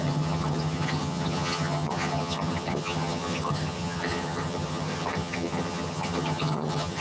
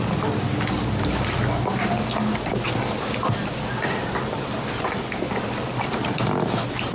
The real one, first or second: second